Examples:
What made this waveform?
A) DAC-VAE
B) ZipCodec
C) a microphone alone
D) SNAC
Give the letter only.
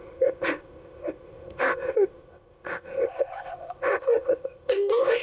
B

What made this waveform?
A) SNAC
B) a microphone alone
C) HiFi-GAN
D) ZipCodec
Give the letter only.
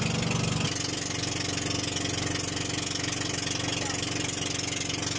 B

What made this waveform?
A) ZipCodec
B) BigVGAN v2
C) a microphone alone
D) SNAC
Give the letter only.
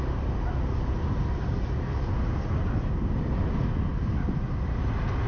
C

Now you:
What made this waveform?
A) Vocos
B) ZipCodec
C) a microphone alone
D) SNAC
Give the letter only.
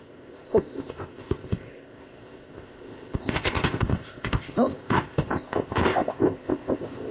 B